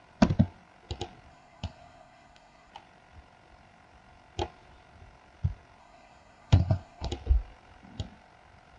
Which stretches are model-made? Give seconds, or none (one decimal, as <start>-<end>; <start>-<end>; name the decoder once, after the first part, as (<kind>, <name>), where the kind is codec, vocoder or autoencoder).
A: 1.3-2.7 (codec, SNAC); 5.8-7.1